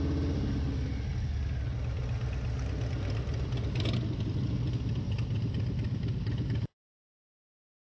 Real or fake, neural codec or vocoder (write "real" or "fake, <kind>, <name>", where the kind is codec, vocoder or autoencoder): real